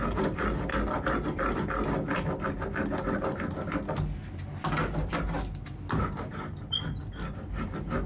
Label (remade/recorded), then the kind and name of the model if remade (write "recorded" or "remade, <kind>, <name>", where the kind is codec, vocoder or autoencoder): recorded